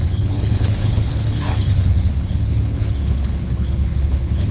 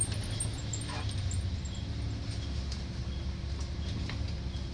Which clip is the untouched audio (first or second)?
second